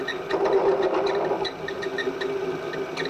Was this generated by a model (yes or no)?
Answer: no